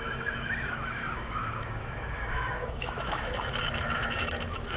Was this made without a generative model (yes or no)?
no